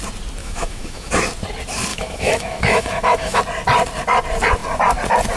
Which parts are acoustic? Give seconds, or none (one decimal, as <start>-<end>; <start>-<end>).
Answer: 0.0-0.4; 1.1-1.9; 3.4-5.4